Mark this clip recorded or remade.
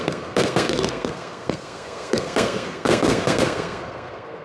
remade